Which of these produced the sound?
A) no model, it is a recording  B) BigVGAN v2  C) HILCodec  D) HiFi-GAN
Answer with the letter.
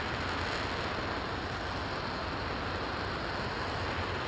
A